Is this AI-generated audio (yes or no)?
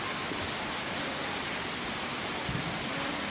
no